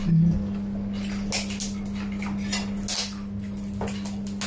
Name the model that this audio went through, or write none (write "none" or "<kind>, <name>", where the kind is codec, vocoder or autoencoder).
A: none